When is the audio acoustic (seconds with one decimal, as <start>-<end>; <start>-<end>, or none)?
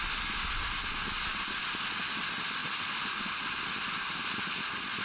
0.0-5.0